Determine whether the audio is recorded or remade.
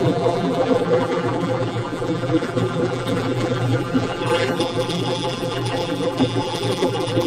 remade